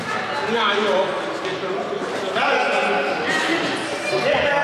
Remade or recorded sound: recorded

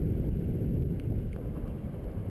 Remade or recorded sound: recorded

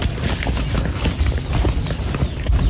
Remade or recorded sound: recorded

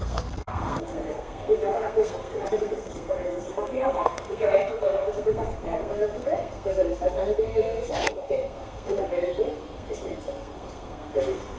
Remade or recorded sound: remade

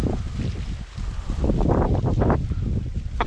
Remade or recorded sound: recorded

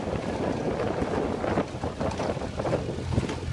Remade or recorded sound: recorded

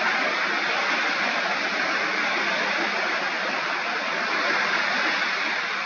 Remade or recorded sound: recorded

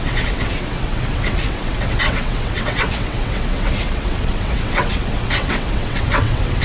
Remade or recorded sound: remade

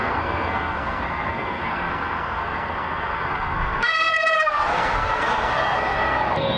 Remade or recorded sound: remade